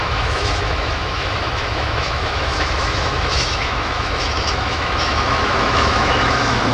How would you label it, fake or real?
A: fake